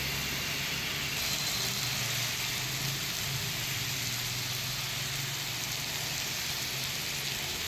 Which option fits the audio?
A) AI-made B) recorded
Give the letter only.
B